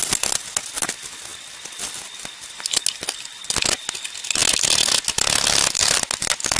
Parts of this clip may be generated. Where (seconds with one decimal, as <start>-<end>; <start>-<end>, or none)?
none